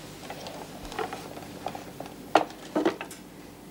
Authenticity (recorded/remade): recorded